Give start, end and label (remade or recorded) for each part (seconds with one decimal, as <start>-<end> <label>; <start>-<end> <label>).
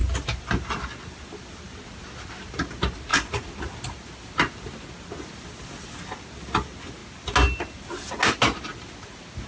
0.0-9.5 recorded